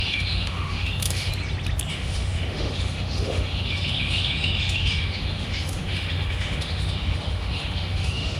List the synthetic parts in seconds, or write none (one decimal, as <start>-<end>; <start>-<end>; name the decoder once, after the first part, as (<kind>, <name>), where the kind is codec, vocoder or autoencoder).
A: 0.0-1.3 (autoencoder, DAC-VAE); 1.9-8.4